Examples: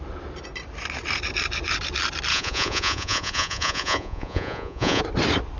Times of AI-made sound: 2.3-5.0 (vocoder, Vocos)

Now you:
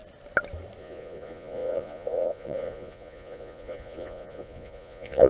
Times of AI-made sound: 0.8-5.3 (vocoder, Vocos)

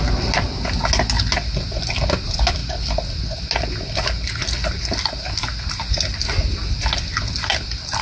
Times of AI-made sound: none

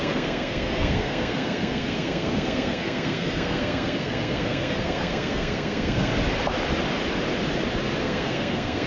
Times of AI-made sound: 0.0-6.1 (codec, SNAC); 8.0-8.9

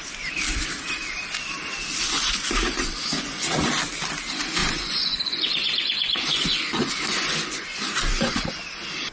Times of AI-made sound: 2.0-3.7 (vocoder, Vocos); 4.6-8.4